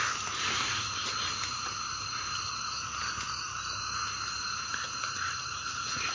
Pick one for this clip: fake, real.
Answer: real